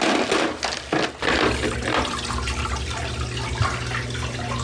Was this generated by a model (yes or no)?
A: no